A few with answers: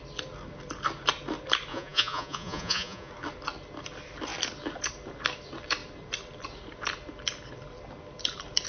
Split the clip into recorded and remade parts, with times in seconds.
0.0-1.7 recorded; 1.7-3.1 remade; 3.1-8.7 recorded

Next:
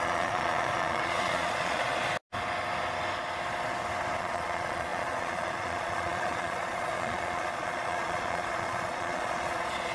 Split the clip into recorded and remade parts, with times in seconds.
0.0-1.9 remade; 1.9-4.2 recorded; 4.2-9.9 remade

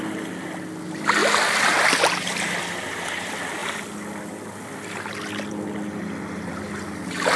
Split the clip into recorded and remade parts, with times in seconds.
0.0-7.4 recorded

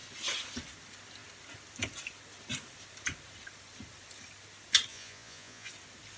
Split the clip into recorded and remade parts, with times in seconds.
0.0-4.9 recorded; 4.9-5.7 remade; 5.7-6.2 recorded

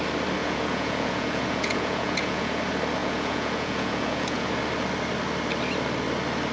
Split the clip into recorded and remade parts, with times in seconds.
0.0-0.4 recorded; 0.4-2.6 remade; 2.6-3.0 recorded; 3.0-4.5 remade; 4.5-6.5 recorded

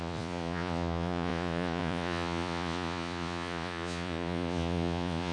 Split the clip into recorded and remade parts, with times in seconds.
0.0-5.3 remade

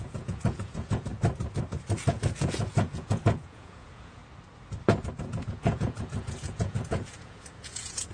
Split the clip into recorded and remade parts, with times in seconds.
0.0-1.1 remade; 1.1-2.1 recorded; 2.1-4.2 remade; 4.2-5.2 recorded; 5.2-8.1 remade